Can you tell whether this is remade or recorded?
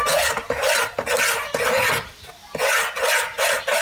recorded